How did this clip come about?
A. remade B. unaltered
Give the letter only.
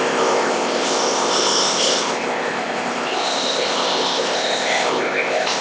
A